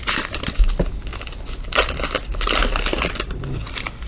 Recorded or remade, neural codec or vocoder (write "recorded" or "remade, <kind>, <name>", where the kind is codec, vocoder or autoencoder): recorded